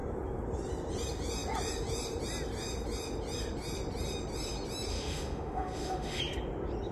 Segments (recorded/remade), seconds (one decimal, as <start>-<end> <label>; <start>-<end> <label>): 0.0-4.9 recorded; 4.9-6.2 remade; 6.2-6.9 recorded